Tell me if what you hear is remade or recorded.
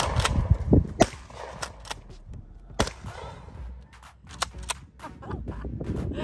recorded